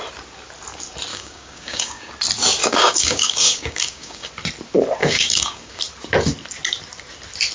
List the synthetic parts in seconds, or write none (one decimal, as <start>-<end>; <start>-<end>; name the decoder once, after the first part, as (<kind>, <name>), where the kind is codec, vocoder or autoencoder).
1.1-2.1 (codec, DAC); 2.6-4.3; 5.0-5.8